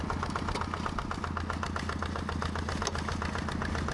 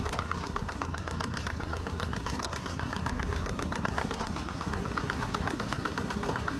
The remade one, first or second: second